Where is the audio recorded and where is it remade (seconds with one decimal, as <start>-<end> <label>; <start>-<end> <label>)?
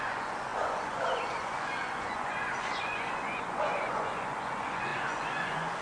0.0-5.8 remade